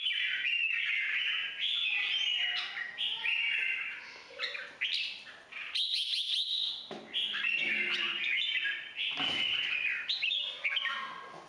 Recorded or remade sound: recorded